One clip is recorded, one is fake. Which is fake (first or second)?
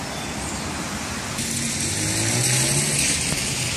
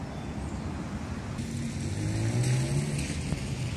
first